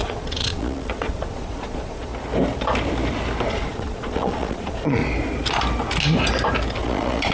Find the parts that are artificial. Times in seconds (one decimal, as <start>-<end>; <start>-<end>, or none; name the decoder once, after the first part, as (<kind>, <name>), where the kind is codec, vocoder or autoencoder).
0.0-2.1 (vocoder, Vocos); 3.5-5.0; 6.8-7.3